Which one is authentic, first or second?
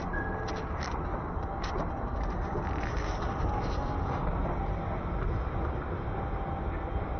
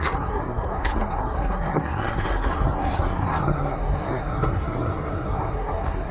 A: first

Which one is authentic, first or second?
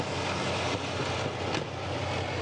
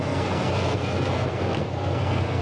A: first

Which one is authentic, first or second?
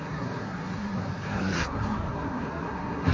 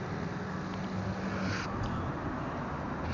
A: second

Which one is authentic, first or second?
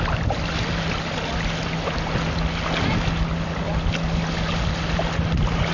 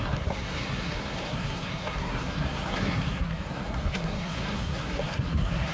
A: first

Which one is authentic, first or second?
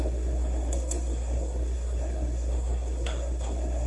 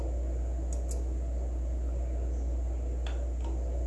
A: second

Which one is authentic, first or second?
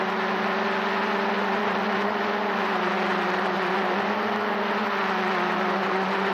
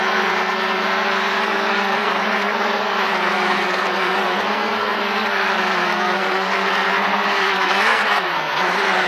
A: first